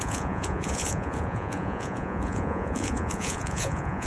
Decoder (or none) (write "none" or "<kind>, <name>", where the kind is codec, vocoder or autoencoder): vocoder, Vocos